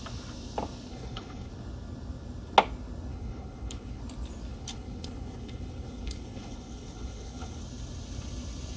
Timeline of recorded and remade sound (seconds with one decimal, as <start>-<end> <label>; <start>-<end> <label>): 0.0-0.9 recorded; 0.9-1.5 remade; 1.5-3.1 recorded; 3.1-4.0 remade; 4.0-4.5 recorded; 4.5-7.6 remade; 7.6-8.8 recorded